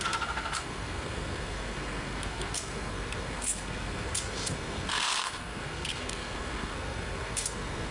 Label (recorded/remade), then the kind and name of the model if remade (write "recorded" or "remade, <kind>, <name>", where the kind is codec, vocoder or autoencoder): remade, codec, SNAC